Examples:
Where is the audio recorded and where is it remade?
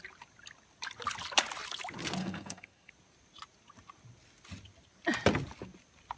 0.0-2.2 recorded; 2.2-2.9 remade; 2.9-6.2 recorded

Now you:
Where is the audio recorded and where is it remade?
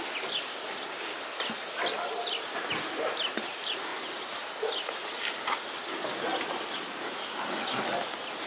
0.0-8.5 recorded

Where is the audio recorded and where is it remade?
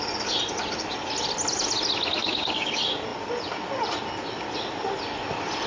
0.0-2.2 recorded; 2.2-2.7 remade; 2.7-5.7 recorded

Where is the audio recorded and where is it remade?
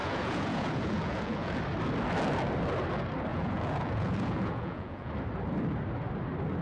0.0-1.6 remade; 1.6-3.3 recorded; 3.3-5.1 remade; 5.1-6.6 recorded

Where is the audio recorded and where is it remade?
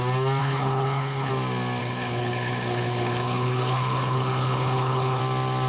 0.0-0.4 recorded; 0.4-1.3 remade; 1.3-1.8 recorded; 1.8-5.2 remade; 5.2-5.7 recorded